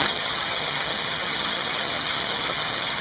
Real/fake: fake